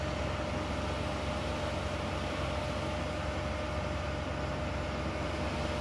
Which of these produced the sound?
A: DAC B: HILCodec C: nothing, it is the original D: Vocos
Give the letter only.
C